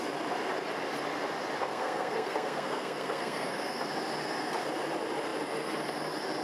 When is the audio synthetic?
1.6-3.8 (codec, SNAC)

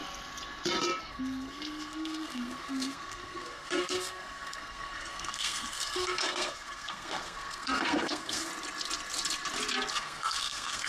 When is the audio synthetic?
1.0-8.5 (codec, SNAC); 9.9-10.9

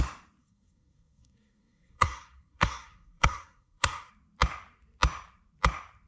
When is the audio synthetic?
0.4-4.1 (codec, SNAC)

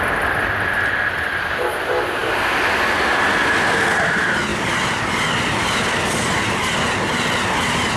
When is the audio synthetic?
none

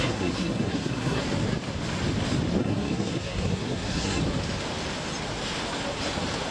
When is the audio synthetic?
0.0-1.2 (codec, SNAC); 2.6-4.2

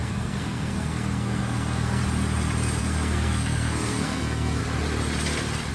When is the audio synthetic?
0.0-2.0 (codec, SNAC); 2.8-4.6

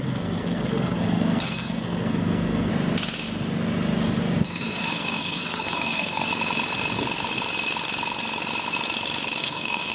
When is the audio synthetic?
0.0-2.7 (codec, SNAC); 4.4-6.3; 9.4-9.9